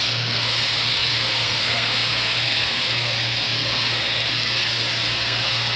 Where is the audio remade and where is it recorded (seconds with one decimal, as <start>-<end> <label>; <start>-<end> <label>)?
0.0-5.8 remade